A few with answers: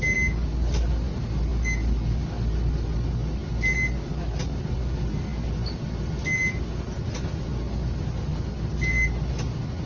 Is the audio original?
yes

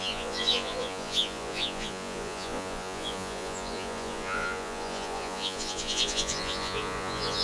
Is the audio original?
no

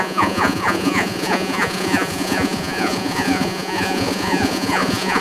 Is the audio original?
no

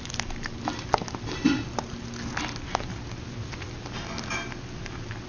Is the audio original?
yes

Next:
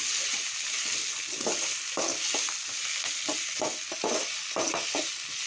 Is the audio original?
yes